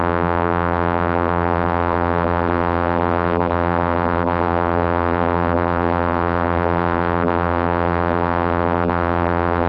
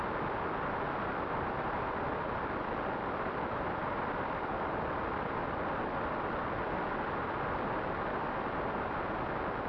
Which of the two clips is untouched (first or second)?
second